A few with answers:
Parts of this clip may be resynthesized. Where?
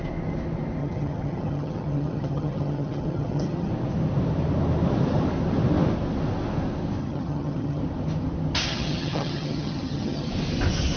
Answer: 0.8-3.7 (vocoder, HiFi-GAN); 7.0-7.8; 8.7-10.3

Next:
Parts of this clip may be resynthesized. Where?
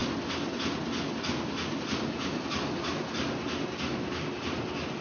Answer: none